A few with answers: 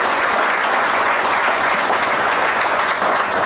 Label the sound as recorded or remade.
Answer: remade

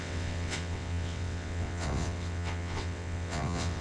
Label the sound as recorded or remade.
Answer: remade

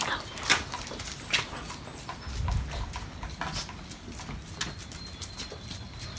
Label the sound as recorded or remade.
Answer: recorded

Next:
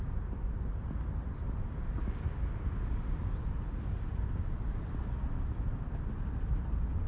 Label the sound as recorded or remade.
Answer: recorded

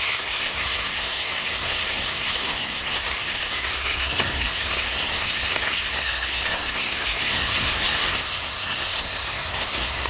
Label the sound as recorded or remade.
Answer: remade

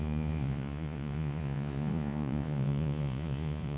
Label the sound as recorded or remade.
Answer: remade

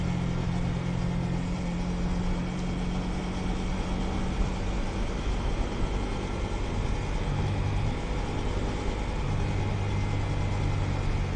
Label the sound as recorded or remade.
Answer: recorded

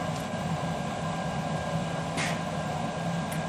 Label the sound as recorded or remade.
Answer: recorded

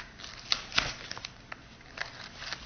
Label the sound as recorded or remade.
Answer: remade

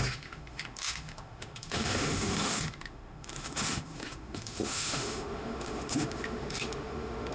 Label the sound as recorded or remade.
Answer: remade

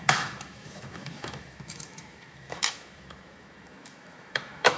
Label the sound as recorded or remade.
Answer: remade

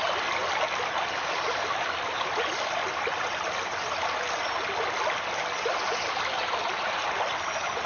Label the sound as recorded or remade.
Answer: recorded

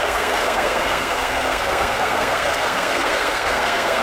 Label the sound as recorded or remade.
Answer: remade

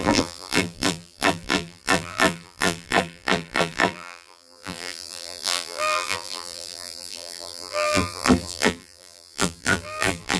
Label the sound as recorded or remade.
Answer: remade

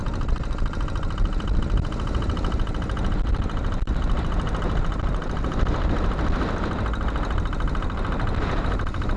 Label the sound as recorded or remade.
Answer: recorded